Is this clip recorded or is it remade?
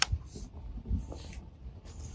recorded